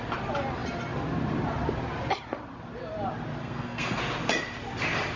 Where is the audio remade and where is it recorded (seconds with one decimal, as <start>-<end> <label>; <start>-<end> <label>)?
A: 0.0-3.4 recorded; 3.4-4.0 remade; 4.0-5.2 recorded